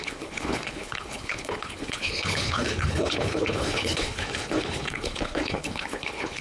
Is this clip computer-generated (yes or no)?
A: yes